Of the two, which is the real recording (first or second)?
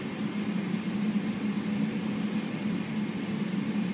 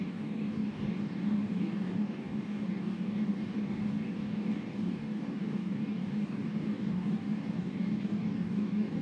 first